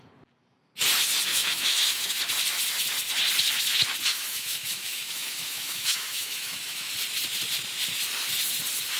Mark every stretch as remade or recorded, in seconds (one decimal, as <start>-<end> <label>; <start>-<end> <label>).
0.0-1.3 recorded; 1.3-2.2 remade; 2.2-4.1 recorded; 4.1-6.9 remade; 6.9-9.0 recorded